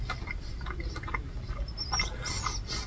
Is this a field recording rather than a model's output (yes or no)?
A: yes